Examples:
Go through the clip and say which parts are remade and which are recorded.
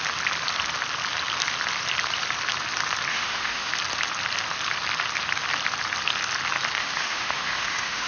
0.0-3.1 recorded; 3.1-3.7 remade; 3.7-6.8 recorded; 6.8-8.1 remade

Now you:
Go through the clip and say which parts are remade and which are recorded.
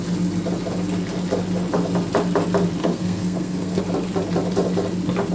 0.0-2.8 recorded; 2.8-3.8 remade; 3.8-5.3 recorded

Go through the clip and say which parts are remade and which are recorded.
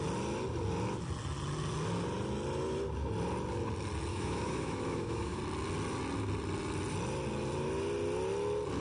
0.0-4.1 recorded; 4.1-5.4 remade; 5.4-8.8 recorded